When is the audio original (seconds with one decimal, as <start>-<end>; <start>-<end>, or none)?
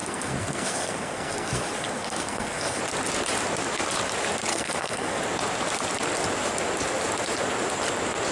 2.8-4.5; 5.2-8.3